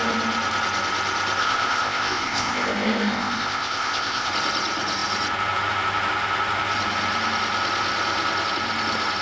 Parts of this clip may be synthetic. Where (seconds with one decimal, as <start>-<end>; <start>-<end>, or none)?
1.4-4.3